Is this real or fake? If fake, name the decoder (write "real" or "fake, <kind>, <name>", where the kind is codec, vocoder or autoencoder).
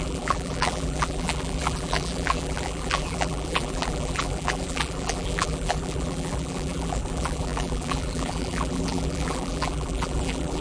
fake, vocoder, BigVGAN v2